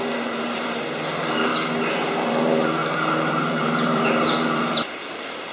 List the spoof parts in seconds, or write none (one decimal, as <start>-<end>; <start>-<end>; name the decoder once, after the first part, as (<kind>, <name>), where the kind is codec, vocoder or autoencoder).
0.0-1.5 (vocoder, BigVGAN v2); 2.0-5.5